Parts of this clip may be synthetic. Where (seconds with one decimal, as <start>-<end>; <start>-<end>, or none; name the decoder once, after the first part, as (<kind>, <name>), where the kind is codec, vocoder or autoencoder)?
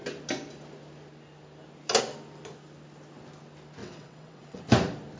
3.8-4.6 (vocoder, WaveNeXt)